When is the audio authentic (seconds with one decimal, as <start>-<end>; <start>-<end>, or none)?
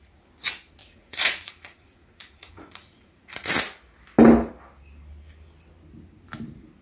0.0-0.8; 3.5-6.8